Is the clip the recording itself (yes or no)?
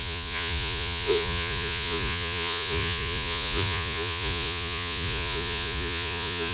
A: no